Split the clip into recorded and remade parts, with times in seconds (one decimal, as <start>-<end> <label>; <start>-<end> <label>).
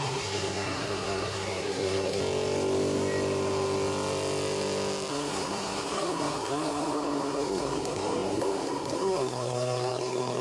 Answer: 0.0-2.2 remade; 2.2-5.1 recorded; 5.1-10.4 remade